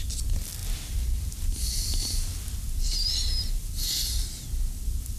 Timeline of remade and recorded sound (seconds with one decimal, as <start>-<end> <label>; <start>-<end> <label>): 0.0-5.2 recorded